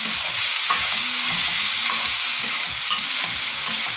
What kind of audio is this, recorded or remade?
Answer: remade